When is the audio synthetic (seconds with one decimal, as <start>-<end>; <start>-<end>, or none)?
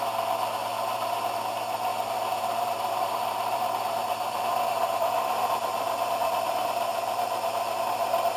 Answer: 1.9-5.3